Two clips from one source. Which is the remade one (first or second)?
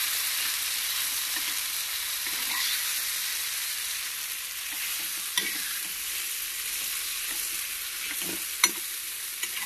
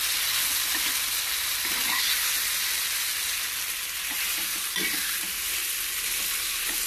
first